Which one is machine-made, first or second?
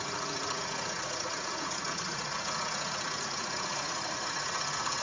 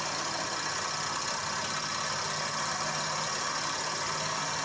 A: first